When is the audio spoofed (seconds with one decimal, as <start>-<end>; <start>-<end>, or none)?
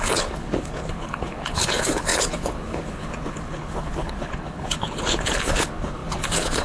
0.0-6.6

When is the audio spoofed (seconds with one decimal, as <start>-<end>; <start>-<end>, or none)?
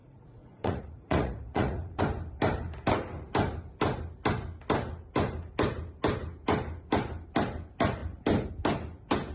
0.0-2.0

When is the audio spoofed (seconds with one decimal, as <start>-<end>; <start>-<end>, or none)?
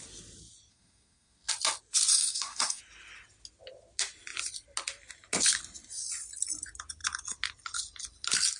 0.7-1.5; 2.1-2.8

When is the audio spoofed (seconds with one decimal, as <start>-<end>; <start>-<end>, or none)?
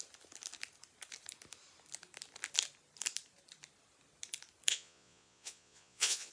4.7-6.3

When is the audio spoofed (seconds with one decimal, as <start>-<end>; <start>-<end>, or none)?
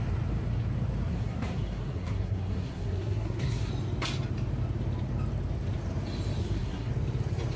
1.1-3.7; 6.4-6.9